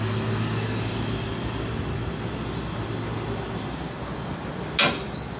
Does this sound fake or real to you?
real